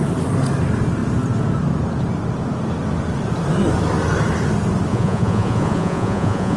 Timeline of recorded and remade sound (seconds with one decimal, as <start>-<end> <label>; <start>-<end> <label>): 0.0-4.9 recorded; 4.9-6.6 remade

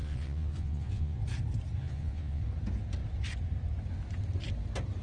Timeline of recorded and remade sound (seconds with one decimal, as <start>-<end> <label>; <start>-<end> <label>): 0.0-1.2 remade; 1.2-1.8 recorded; 1.8-2.4 remade; 2.4-5.0 recorded

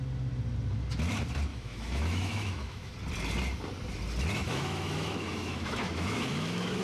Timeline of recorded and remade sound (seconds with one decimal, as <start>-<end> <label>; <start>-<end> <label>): 0.0-1.5 recorded; 1.5-2.9 remade; 2.9-4.4 recorded; 4.4-6.8 remade

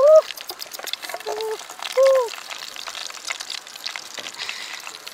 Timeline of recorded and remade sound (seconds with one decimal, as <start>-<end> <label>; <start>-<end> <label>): 0.0-1.3 remade; 1.3-2.6 recorded; 2.6-3.0 remade; 3.0-4.4 recorded; 4.4-5.1 remade

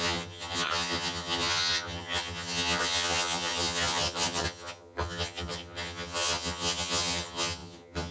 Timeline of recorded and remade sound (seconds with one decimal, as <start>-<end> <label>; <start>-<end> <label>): 0.0-8.1 remade